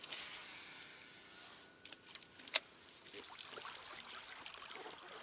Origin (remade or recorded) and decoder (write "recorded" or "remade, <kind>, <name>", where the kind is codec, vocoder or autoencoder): recorded